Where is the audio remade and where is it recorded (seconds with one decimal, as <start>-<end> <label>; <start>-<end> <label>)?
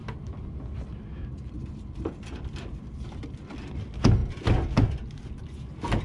0.0-6.0 recorded